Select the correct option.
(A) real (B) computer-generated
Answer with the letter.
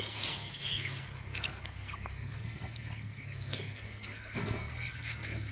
B